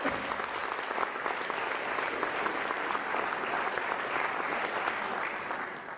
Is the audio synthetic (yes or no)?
no